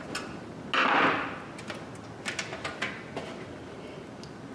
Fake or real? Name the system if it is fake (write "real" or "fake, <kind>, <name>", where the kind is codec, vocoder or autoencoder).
real